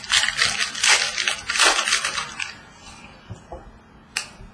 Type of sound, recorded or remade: recorded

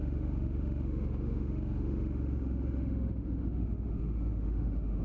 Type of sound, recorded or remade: remade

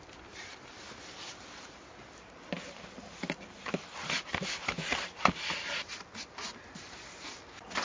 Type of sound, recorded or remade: recorded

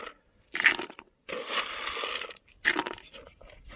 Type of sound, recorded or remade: recorded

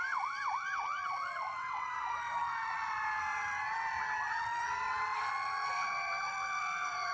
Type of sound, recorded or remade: remade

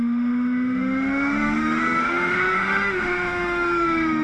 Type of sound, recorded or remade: remade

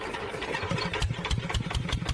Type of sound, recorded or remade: recorded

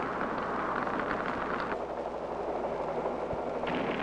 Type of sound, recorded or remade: recorded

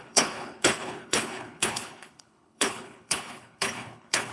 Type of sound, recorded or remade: remade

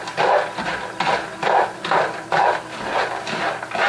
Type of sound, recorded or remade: recorded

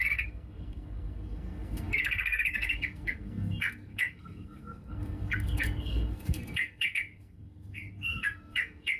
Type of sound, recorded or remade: remade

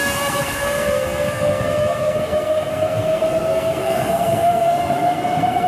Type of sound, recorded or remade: remade